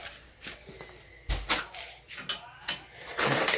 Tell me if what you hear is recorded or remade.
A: recorded